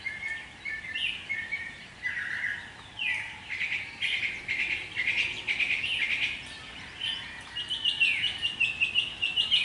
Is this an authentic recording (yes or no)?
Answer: yes